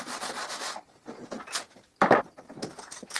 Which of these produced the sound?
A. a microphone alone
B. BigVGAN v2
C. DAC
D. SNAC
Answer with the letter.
A